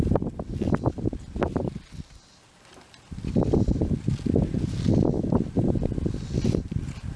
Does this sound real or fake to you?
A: real